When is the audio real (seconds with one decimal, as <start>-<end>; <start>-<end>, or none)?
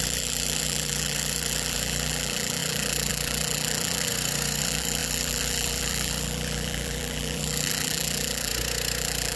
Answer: 4.1-4.6; 8.5-9.0